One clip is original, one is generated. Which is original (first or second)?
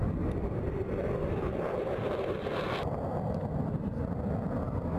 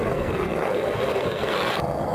first